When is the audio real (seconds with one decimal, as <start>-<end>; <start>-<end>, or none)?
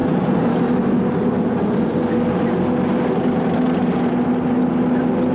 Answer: 0.0-5.3